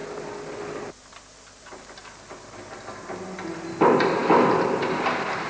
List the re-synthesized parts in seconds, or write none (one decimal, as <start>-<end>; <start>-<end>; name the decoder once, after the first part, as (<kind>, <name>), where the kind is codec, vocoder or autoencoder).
none